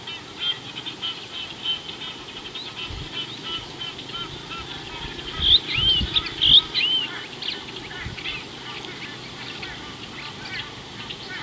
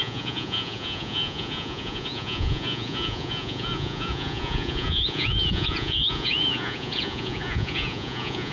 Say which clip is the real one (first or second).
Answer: first